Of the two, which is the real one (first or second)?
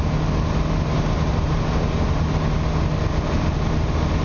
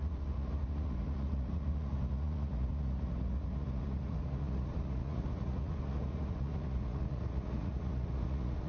first